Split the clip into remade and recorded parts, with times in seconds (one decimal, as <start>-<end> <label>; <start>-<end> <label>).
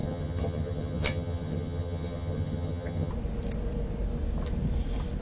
0.0-3.1 remade; 3.1-5.2 recorded